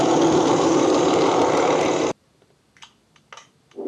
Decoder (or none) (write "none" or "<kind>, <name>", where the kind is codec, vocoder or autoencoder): none